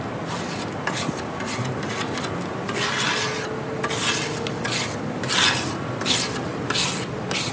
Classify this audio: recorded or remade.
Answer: recorded